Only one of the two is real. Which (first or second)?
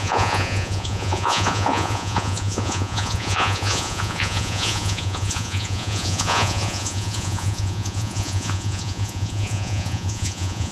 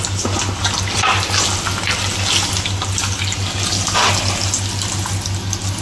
second